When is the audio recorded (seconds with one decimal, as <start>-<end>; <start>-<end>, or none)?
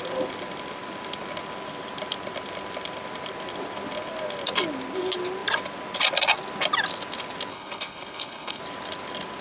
0.0-7.5; 8.6-9.4